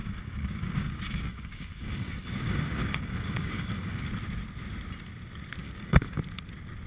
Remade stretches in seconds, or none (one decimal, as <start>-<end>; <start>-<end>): 0.0-4.1; 5.6-6.2